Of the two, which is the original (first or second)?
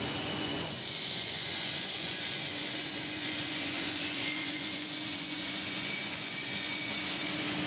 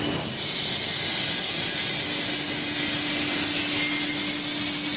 second